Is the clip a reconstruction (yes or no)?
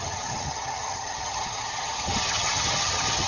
yes